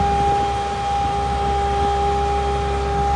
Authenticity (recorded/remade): recorded